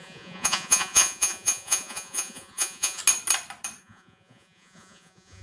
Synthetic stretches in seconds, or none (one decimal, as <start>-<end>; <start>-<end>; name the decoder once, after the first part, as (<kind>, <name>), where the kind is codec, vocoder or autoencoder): 0.0-3.0 (vocoder, Vocos); 3.8-5.4